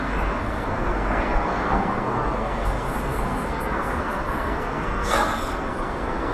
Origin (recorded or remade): remade